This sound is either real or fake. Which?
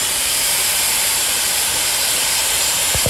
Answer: fake